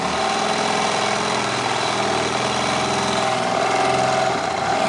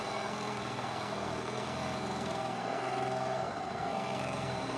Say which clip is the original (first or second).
first